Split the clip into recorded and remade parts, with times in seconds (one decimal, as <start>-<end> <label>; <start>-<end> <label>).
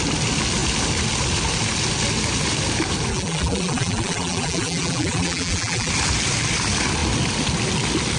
0.0-3.1 recorded; 3.1-5.9 remade; 5.9-8.2 recorded